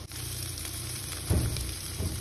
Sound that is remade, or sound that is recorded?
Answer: remade